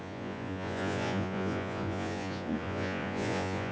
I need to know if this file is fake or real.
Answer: fake